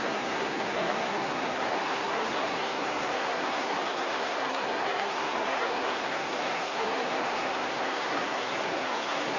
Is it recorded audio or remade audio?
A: remade